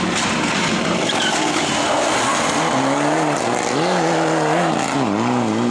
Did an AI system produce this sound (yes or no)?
no